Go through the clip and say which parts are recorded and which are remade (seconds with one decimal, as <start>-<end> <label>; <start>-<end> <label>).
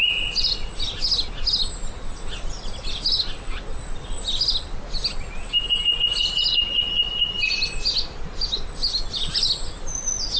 0.0-10.4 recorded